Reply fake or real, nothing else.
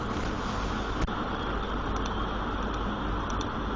real